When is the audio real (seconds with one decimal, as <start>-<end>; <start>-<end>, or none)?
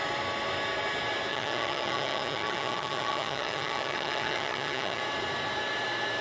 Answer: 0.0-1.3; 5.0-6.2